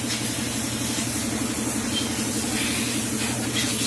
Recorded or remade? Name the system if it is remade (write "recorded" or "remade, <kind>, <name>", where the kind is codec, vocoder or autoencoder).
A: recorded